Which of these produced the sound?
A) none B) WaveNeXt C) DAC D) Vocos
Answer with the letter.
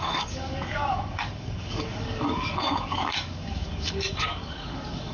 C